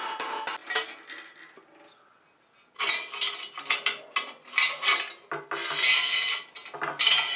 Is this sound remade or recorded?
recorded